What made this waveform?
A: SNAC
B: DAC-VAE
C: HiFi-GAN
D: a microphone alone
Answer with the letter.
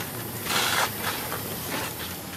D